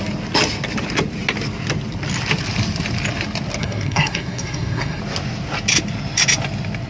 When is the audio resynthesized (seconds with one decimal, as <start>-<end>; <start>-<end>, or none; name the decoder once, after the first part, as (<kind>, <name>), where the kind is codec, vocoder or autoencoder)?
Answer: 3.6-5.0 (codec, SNAC)